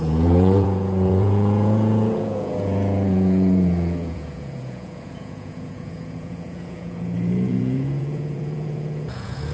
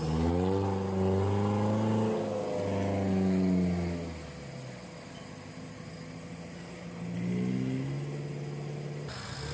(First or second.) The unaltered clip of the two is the second